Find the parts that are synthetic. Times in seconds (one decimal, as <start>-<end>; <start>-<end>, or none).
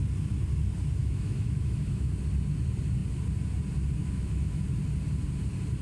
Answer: 1.0-2.1; 4.0-4.6